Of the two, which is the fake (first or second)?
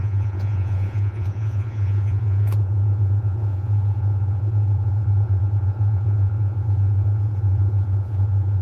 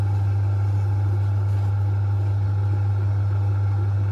first